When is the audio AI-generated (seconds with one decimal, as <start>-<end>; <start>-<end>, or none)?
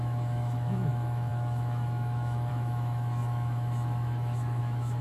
0.0-5.0